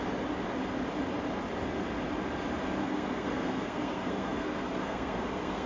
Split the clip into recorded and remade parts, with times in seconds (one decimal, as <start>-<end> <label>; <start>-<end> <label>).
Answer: 0.0-2.8 recorded; 2.8-5.7 remade